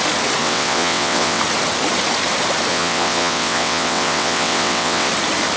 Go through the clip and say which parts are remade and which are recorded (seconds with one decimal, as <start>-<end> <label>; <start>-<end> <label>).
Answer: 0.0-0.4 recorded; 0.4-1.4 remade; 1.4-2.7 recorded; 2.7-5.1 remade; 5.1-5.6 recorded